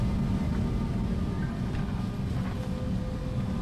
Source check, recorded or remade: recorded